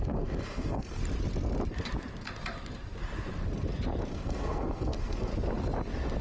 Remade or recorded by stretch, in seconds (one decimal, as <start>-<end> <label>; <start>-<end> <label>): 0.0-1.0 remade; 1.0-4.1 recorded; 4.1-5.3 remade; 5.3-6.2 recorded